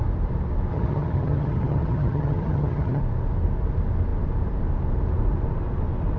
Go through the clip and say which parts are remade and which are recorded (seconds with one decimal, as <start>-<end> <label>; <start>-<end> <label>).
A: 0.0-0.7 recorded; 0.7-3.0 remade; 3.0-6.2 recorded